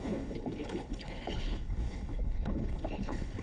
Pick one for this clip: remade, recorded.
remade